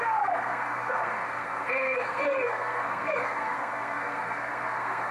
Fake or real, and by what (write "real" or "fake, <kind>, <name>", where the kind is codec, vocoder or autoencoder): fake, codec, SNAC